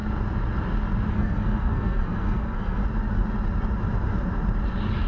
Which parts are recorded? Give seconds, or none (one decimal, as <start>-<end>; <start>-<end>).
0.0-1.1; 2.8-5.1

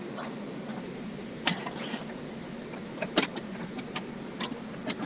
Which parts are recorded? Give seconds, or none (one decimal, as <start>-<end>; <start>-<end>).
0.0-0.7; 3.8-5.1